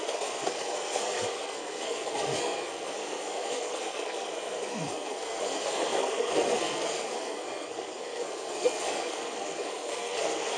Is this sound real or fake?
fake